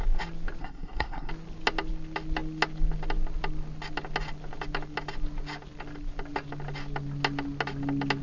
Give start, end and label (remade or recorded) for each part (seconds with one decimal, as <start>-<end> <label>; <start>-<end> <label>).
0.0-0.6 recorded; 0.6-1.3 remade; 1.3-8.2 recorded